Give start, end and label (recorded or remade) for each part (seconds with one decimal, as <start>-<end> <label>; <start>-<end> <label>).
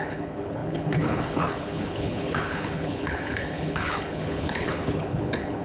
0.0-5.6 remade